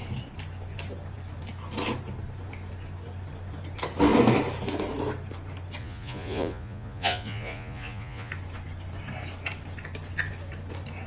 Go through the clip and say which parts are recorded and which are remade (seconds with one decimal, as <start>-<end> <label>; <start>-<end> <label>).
0.0-5.8 recorded; 5.8-8.3 remade; 8.3-11.1 recorded